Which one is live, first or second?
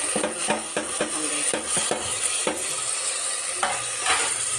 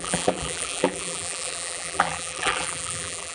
first